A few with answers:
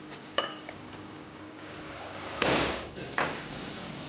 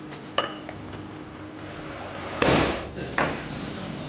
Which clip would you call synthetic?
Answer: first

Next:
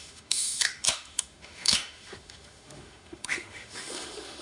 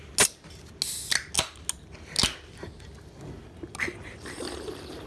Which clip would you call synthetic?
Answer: first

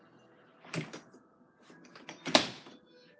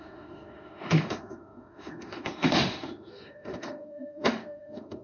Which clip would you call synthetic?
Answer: second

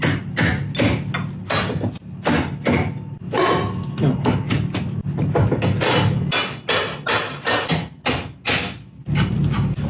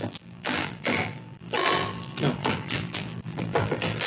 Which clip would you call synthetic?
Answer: second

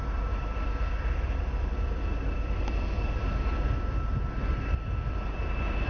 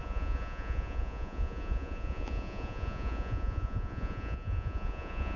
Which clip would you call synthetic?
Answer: second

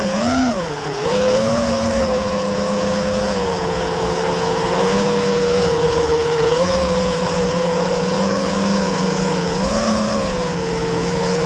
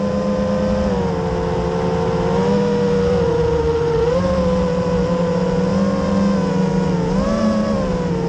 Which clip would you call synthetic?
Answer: first